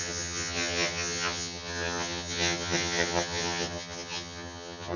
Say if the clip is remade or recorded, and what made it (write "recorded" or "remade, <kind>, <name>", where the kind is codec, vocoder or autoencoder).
remade, vocoder, HiFi-GAN